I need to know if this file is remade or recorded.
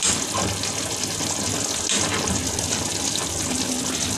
recorded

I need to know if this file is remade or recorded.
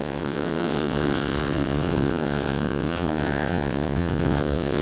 remade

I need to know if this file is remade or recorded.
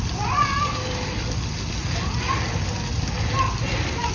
recorded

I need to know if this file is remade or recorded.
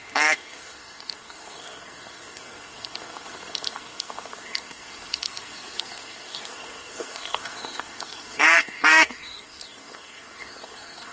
remade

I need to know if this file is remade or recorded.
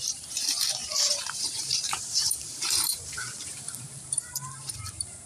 remade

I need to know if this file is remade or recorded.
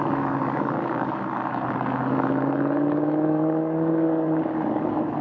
remade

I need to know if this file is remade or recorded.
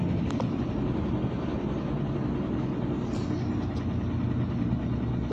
recorded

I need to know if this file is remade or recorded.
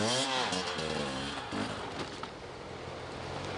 recorded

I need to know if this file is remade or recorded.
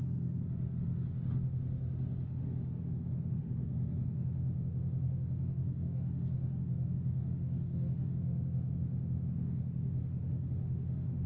remade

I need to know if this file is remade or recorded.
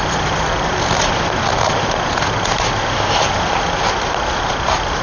recorded